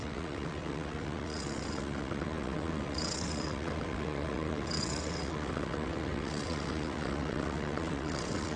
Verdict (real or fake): fake